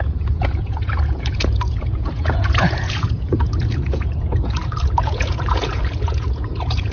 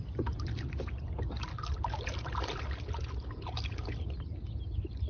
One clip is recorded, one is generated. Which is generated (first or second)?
first